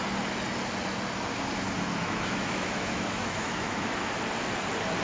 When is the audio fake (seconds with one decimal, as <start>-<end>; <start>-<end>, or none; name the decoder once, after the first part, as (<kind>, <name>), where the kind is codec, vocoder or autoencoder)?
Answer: 2.0-4.1 (autoencoder, DAC-VAE)

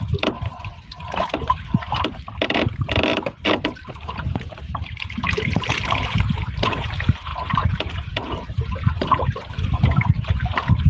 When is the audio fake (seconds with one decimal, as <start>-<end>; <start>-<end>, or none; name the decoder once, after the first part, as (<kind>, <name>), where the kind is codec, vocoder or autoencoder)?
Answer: 0.0-10.9 (vocoder, BigVGAN v2)

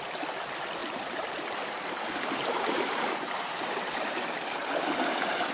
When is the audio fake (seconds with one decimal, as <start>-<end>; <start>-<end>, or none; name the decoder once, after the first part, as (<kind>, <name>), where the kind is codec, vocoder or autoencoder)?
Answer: 0.8-4.1 (vocoder, BigVGAN v2)

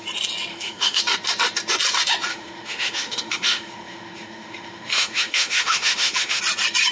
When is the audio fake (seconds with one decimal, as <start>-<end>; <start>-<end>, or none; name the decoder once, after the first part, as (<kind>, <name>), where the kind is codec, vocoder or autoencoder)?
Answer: 0.5-1.0 (autoencoder, DAC-VAE); 2.3-6.4

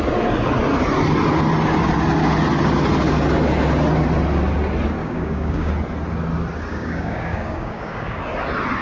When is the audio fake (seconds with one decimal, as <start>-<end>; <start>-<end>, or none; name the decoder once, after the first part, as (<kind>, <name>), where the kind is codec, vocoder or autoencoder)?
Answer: 5.0-5.7 (codec, DAC); 6.7-8.2

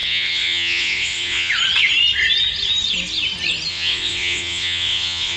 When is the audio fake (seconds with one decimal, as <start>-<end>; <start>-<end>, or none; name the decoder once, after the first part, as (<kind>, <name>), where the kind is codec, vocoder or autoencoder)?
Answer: 0.0-1.5 (vocoder, WaveNeXt); 3.7-5.4